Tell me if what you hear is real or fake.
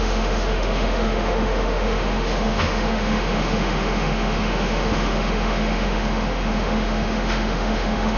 fake